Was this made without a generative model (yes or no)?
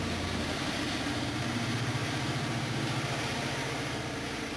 no